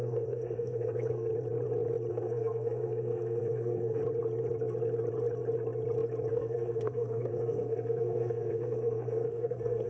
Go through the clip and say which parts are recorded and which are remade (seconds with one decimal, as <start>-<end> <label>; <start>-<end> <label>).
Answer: 0.0-1.3 remade; 1.3-2.1 recorded; 2.1-4.0 remade; 4.0-6.3 recorded; 6.3-9.9 remade